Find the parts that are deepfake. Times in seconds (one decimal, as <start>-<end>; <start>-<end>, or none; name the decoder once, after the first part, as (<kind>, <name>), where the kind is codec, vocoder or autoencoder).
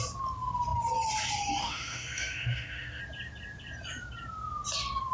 1.6-3.0 (autoencoder, DAC-VAE)